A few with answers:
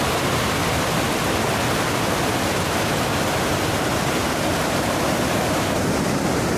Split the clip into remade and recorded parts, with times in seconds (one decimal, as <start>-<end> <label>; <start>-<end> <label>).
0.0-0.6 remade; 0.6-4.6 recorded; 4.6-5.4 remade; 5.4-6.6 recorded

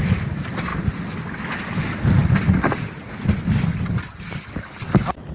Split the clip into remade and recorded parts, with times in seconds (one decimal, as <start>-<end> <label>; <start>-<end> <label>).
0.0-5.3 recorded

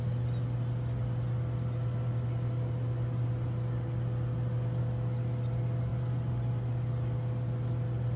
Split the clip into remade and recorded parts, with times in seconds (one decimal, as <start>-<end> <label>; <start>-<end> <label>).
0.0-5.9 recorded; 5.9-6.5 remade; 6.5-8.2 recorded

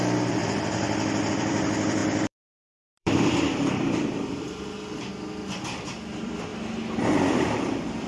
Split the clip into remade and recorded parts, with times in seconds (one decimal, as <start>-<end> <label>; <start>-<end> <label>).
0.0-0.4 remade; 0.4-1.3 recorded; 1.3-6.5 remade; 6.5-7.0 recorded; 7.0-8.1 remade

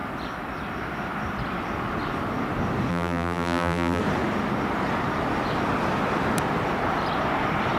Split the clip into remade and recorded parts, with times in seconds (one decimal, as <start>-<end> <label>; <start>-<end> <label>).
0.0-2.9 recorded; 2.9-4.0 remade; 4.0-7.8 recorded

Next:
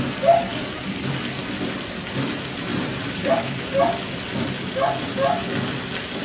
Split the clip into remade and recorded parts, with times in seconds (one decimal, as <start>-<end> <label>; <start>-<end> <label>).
0.0-2.7 recorded; 2.7-3.3 remade; 3.3-6.2 recorded